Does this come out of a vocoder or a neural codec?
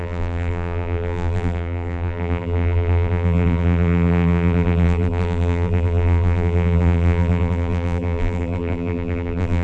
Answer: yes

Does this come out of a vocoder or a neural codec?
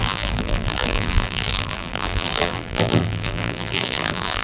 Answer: yes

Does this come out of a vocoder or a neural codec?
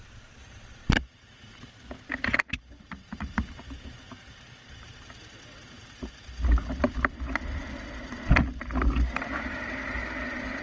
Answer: yes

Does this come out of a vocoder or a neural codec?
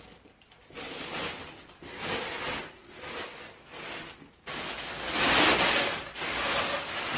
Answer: no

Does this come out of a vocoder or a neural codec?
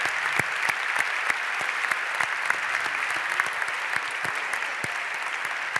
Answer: yes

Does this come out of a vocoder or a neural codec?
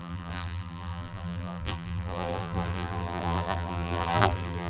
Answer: yes